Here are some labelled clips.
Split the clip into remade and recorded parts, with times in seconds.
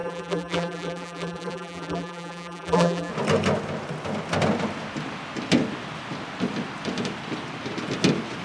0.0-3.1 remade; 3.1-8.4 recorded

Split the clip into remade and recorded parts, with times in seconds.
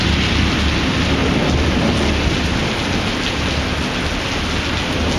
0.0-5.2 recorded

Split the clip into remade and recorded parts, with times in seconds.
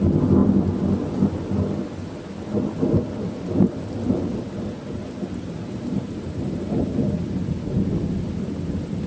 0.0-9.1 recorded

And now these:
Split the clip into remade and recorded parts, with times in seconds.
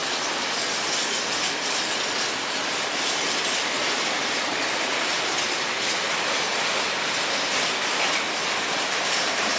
0.0-3.8 remade; 3.8-5.9 recorded; 5.9-6.5 remade; 6.5-8.7 recorded; 8.7-9.6 remade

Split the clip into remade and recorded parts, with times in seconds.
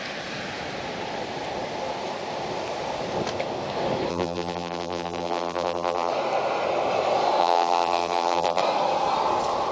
0.0-4.1 recorded; 4.1-6.1 remade; 6.1-7.4 recorded; 7.4-8.6 remade; 8.6-9.7 recorded